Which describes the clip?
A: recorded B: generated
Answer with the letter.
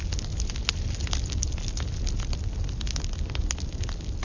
A